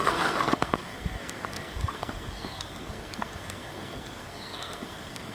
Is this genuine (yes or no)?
no